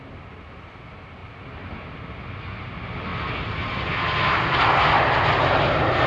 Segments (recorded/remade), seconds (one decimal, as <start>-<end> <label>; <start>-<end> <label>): 0.0-6.1 recorded